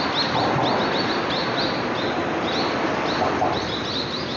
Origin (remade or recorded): recorded